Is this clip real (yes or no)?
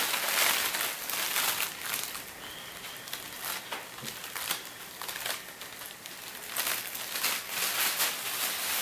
yes